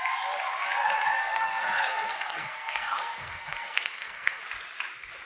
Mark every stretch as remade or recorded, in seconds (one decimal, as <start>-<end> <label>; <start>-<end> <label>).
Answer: 0.0-1.2 recorded; 1.2-4.4 remade; 4.4-5.3 recorded